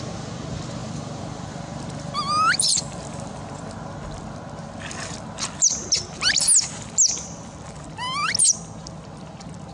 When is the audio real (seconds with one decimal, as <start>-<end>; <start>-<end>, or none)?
0.0-0.8; 3.7-9.7